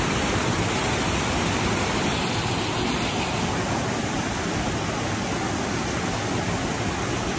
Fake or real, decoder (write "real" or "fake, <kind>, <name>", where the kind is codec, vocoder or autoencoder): real